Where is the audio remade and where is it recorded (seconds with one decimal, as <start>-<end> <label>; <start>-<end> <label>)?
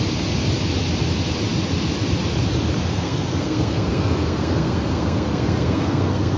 0.0-2.9 recorded; 2.9-6.4 remade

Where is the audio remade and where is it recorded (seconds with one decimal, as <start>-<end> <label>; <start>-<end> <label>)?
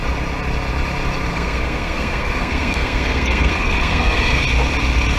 0.0-1.3 recorded; 1.3-4.4 remade; 4.4-5.2 recorded